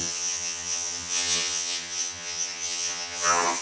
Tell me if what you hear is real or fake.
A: fake